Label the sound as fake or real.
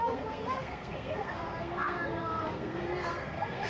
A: fake